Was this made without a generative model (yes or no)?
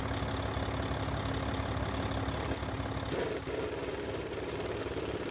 yes